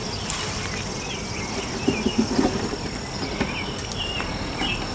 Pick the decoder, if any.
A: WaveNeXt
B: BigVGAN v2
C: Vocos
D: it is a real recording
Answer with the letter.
D